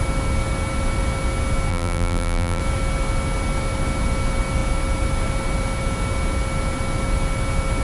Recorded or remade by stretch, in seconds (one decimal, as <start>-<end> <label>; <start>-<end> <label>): 0.0-1.7 recorded; 1.7-2.6 remade; 2.6-7.8 recorded